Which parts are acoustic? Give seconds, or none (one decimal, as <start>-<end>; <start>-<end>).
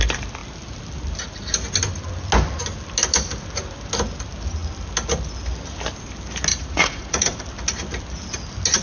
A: 0.0-6.5; 7.4-8.8